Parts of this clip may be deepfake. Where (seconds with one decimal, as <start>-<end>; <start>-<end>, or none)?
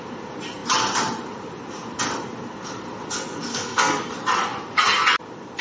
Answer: 3.5-4.1